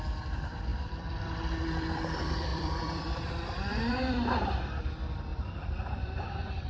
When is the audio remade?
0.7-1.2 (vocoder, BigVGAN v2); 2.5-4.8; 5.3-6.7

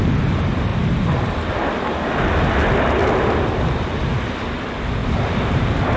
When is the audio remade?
5.0-6.0 (vocoder, BigVGAN v2)

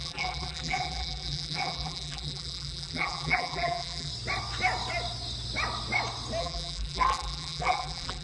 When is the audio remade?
0.0-4.1 (vocoder, BigVGAN v2); 6.4-8.2

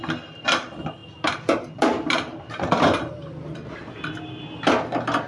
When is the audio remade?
1.0-4.2 (vocoder, BigVGAN v2)

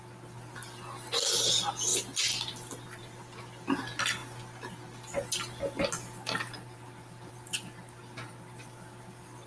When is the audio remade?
none

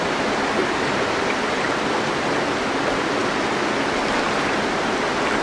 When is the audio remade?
0.0-3.2 (vocoder, BigVGAN v2); 4.6-5.4

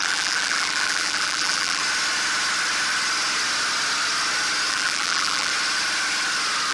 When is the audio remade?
0.0-1.8 (vocoder, BigVGAN v2); 4.7-5.5

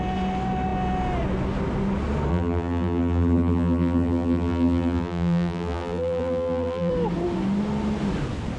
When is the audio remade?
2.3-6.9 (vocoder, BigVGAN v2)